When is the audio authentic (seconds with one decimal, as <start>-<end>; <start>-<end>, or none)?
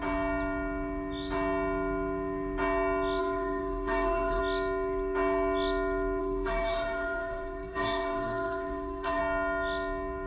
0.0-3.2; 4.4-6.2; 9.2-10.3